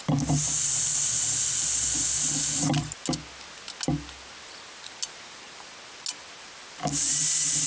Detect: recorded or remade recorded